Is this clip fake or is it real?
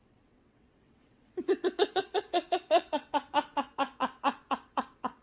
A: fake